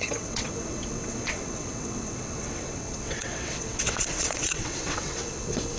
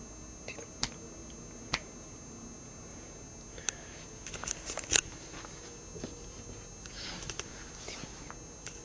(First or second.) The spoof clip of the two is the first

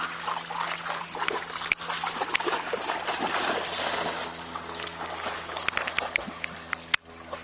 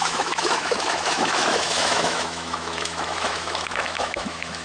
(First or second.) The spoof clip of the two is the second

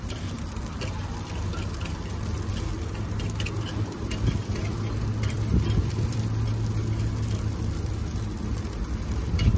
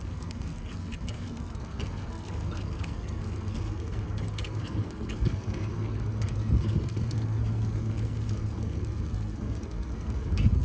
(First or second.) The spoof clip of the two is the second